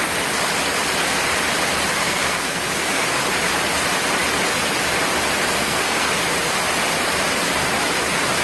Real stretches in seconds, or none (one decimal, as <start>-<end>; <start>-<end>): 0.0-2.0; 3.2-5.6; 6.1-8.4